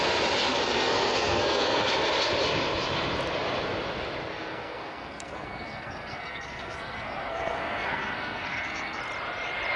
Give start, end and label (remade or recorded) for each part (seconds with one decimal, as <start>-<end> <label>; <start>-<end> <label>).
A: 0.0-0.5 recorded; 0.5-1.9 remade; 1.9-4.3 recorded; 4.3-9.0 remade; 9.0-9.8 recorded